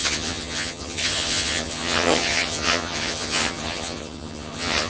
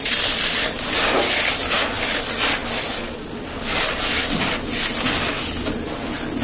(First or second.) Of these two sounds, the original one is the second